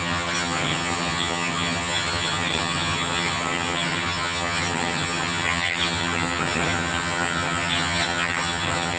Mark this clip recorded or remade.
remade